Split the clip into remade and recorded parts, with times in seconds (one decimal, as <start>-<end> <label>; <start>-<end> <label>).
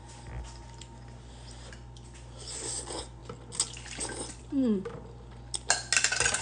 0.0-6.4 recorded